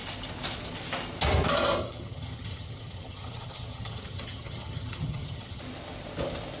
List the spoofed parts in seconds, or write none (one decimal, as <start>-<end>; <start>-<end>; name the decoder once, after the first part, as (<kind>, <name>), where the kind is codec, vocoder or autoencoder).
1.8-5.6 (vocoder, HiFi-GAN)